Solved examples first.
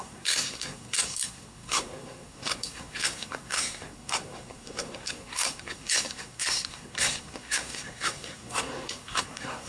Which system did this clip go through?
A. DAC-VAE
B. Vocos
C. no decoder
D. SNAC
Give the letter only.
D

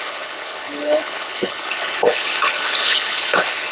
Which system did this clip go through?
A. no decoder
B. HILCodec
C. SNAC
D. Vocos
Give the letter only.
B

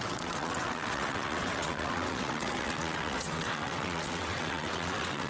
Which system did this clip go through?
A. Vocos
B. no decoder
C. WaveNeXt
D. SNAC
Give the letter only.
C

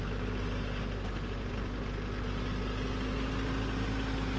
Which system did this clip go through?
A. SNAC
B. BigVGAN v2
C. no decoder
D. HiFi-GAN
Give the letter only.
C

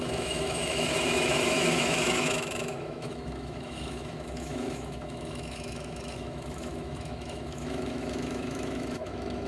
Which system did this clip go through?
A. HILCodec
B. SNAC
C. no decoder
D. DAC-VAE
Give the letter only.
D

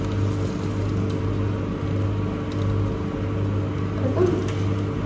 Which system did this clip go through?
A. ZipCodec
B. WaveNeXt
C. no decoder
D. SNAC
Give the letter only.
C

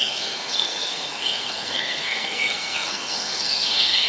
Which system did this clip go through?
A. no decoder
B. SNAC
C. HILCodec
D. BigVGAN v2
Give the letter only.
B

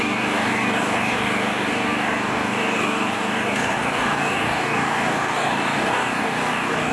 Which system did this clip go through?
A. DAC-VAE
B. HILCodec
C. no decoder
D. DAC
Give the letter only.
D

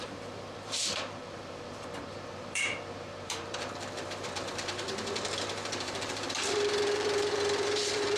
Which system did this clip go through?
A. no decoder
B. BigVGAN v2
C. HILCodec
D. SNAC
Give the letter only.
B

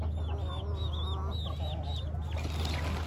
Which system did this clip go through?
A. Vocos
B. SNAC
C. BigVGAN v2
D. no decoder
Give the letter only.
D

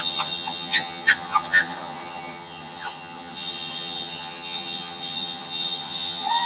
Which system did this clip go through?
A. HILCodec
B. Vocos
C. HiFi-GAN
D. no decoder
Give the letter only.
C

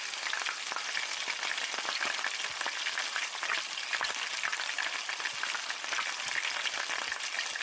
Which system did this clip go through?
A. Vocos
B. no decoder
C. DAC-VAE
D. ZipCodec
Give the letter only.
B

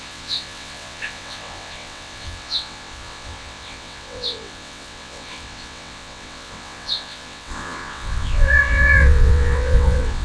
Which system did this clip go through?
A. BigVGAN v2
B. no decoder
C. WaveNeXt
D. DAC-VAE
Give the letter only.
C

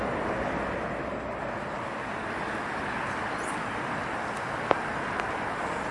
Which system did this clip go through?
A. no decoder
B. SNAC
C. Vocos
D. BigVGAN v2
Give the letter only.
A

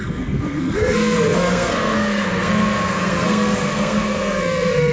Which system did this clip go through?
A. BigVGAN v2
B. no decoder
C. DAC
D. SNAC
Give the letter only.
D